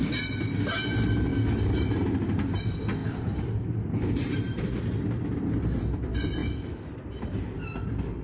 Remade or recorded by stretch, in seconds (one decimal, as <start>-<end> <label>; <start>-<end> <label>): 0.0-3.0 recorded; 3.0-5.2 remade; 5.2-6.4 recorded; 6.4-7.6 remade; 7.6-8.2 recorded